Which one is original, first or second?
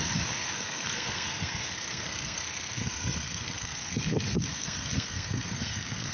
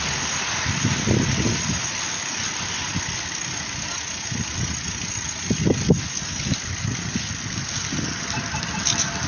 second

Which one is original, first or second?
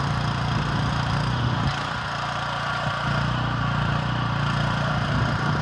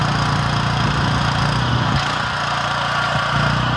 second